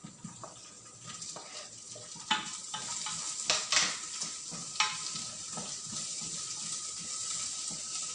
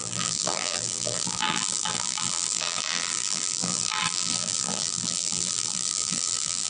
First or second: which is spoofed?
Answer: second